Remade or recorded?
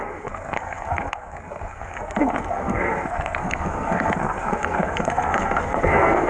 remade